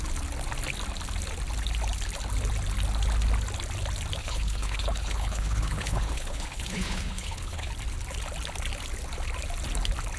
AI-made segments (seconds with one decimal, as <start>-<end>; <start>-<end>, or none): 4.2-7.7